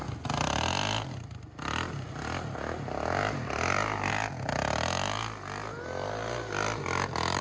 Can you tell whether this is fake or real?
real